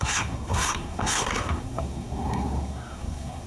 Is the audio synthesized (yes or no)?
yes